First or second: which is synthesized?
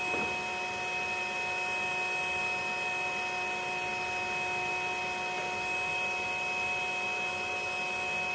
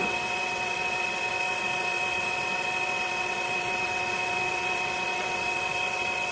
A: second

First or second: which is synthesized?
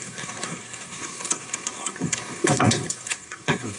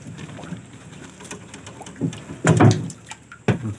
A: first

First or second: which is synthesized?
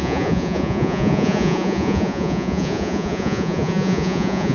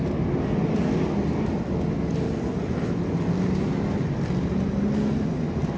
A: first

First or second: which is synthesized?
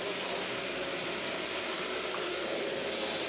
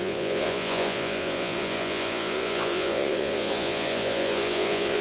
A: second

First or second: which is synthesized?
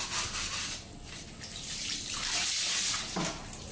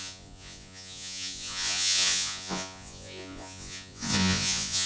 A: second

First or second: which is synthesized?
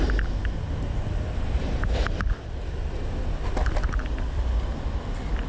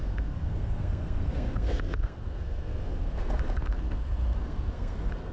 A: second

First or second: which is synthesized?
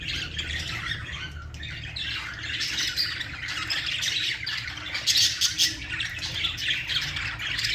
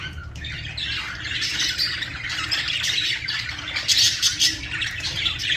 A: second